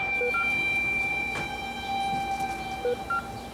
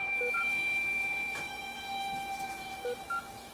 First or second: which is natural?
first